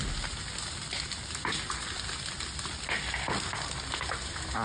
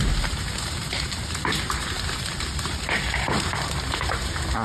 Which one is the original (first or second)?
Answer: first